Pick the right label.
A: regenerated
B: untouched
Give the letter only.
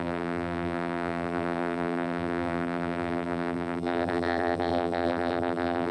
A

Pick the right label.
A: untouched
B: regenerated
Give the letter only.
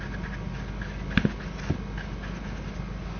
A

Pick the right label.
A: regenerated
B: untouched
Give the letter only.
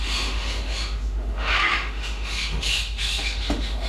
A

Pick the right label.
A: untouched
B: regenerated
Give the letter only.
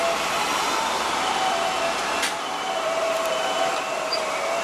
B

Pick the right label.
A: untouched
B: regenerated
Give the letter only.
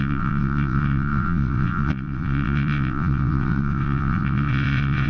B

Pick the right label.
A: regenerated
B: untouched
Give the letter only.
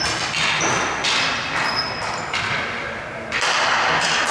B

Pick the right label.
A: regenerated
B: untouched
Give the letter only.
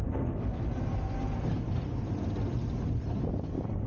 B